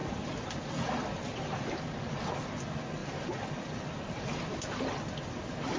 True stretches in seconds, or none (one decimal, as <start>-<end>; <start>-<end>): 0.0-5.8